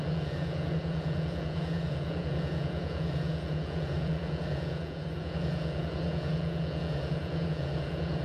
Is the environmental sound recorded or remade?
remade